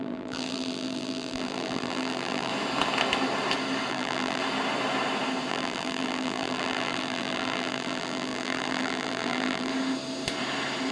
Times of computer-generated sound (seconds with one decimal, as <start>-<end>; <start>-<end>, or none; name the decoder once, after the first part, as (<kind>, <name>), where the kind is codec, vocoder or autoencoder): 0.0-2.5 (vocoder, BigVGAN v2); 3.9-4.4; 5.5-9.7